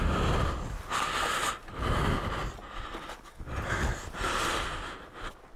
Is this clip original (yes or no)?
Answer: yes